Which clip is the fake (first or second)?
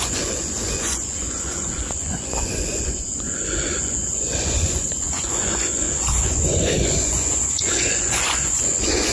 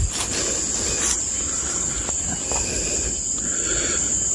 first